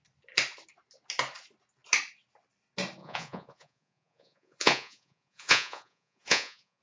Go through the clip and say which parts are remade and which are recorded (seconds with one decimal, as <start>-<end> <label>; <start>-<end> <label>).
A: 0.0-3.0 recorded; 3.0-6.8 remade

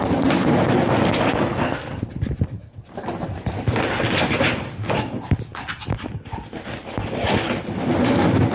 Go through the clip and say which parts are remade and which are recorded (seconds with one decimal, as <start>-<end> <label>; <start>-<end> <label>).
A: 0.0-8.5 recorded

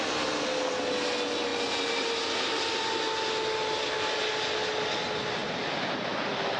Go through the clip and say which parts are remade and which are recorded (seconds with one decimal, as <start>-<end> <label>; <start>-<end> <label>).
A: 0.0-6.6 recorded

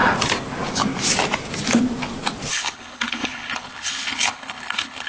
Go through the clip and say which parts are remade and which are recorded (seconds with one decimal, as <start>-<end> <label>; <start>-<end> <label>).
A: 0.0-2.5 recorded; 2.5-5.1 remade

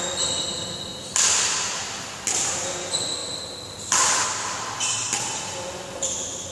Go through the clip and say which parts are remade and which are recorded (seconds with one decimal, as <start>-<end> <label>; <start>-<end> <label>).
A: 0.0-6.5 recorded